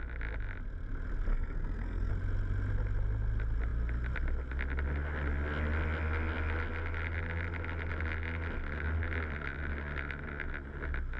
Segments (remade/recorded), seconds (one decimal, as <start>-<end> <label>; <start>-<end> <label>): 0.0-1.3 recorded; 1.3-2.1 remade; 2.1-11.2 recorded